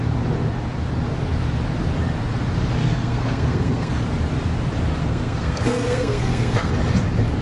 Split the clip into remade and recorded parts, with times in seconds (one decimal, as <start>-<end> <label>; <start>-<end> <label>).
0.0-2.8 recorded; 2.8-4.0 remade; 4.0-5.0 recorded; 5.0-6.7 remade; 6.7-7.4 recorded